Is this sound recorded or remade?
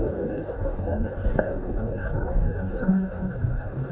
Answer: remade